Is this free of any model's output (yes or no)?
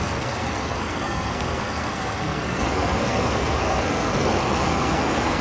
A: no